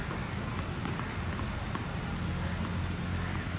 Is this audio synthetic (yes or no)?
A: no